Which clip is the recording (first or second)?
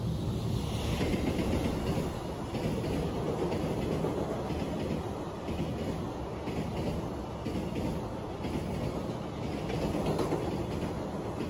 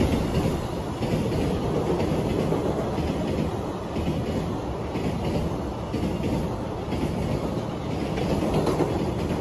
first